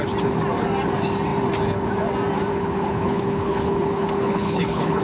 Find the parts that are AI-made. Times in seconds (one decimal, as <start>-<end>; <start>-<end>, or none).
2.5-5.0